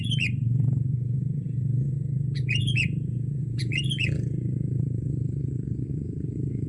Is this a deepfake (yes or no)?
yes